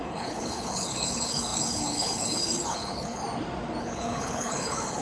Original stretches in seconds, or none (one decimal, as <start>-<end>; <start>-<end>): 3.2-3.8